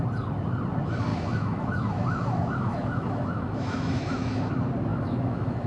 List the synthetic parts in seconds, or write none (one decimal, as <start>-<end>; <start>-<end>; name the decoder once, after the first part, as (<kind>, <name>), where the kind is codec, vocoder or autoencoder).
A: 1.1-4.5 (autoencoder, DAC-VAE); 4.9-5.7

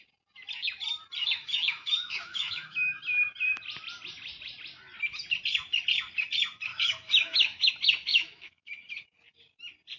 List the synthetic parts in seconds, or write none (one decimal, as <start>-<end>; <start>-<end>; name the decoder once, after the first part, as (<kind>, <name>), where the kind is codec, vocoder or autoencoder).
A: 1.2-3.0 (autoencoder, DAC-VAE); 6.7-7.7; 8.1-8.7

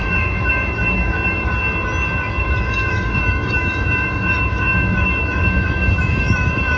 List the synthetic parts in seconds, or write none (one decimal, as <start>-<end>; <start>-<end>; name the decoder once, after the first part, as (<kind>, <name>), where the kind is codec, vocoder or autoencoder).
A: 0.0-1.6 (autoencoder, DAC-VAE); 2.4-6.8

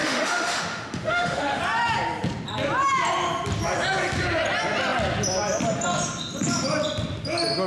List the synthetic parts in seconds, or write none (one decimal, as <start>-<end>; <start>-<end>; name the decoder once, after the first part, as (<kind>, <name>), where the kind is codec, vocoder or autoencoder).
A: 0.0-1.6 (autoencoder, DAC-VAE)

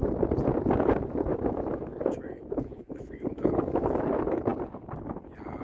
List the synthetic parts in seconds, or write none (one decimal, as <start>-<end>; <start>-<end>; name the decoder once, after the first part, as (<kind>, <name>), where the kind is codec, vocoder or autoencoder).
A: 1.3-4.0 (autoencoder, DAC-VAE)

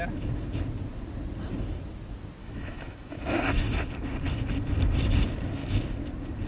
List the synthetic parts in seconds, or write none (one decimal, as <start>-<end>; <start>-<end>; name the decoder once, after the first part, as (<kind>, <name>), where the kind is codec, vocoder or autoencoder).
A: 2.4-3.3 (autoencoder, DAC-VAE)

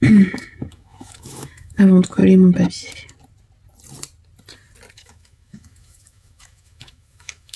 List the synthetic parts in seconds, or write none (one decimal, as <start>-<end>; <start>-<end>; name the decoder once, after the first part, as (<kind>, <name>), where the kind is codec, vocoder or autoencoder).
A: 0.0-2.2 (autoencoder, DAC-VAE); 4.9-7.6